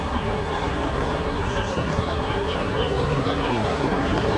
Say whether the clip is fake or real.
fake